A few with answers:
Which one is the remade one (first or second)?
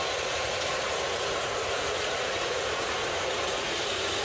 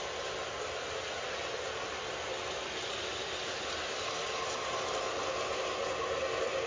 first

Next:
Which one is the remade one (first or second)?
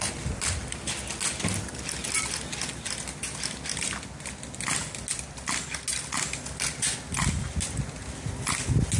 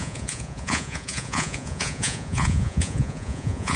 second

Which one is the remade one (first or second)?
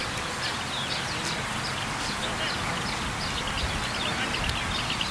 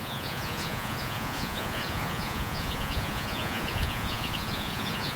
second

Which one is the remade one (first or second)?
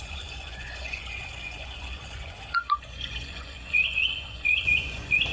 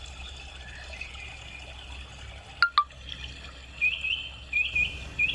first